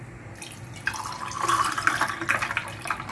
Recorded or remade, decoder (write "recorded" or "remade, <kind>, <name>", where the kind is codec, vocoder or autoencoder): recorded